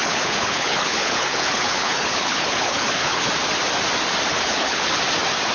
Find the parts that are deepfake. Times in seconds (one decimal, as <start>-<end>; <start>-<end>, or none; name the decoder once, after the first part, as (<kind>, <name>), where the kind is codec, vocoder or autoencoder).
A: 0.0-3.3 (codec, HILCodec); 4.3-5.0